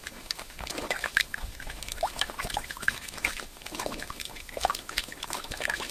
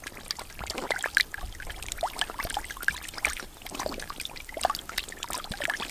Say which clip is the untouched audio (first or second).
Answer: second